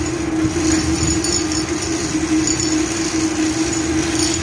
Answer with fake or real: real